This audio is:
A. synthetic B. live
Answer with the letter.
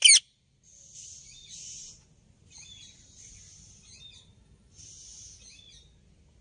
B